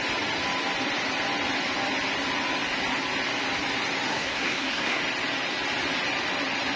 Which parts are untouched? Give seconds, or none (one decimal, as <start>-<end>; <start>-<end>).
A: 0.0-4.1; 5.0-6.8